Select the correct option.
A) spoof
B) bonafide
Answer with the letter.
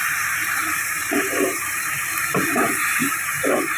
A